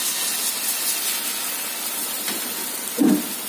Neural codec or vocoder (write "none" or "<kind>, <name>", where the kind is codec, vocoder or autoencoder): none